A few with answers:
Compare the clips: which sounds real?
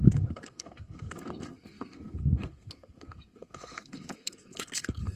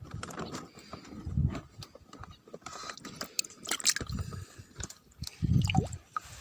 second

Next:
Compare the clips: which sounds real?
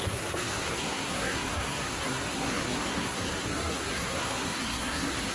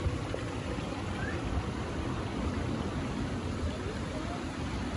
second